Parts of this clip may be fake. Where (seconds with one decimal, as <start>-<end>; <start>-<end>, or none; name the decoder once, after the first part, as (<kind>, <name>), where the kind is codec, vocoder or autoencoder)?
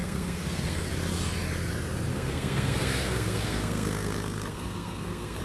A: 0.0-0.9 (codec, SNAC); 2.1-5.4